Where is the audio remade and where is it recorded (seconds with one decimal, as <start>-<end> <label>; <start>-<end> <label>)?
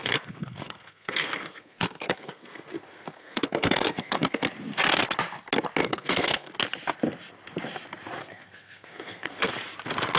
0.0-4.4 remade; 4.4-5.8 recorded; 5.8-6.5 remade; 6.5-8.2 recorded; 8.2-9.5 remade; 9.5-10.2 recorded